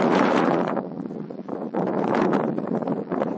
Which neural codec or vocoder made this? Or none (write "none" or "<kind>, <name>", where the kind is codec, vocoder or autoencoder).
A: vocoder, Vocos